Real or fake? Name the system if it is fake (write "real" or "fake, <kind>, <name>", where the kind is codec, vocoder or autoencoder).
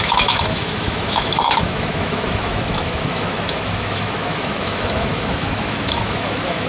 fake, autoencoder, DAC-VAE